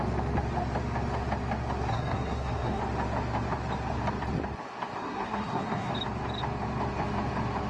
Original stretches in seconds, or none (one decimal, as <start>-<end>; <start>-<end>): 0.0-1.9; 2.8-5.0; 5.9-7.7